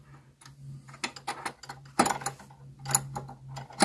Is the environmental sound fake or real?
real